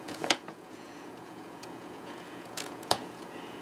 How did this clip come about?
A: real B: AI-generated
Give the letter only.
B